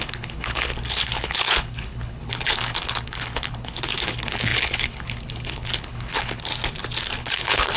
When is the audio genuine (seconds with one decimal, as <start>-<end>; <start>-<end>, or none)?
6.5-7.2